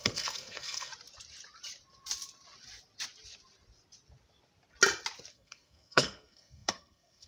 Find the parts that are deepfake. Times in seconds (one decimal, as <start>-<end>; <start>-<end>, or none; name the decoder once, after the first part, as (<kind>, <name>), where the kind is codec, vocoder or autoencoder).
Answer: 0.0-0.9 (codec, SNAC); 5.3-7.3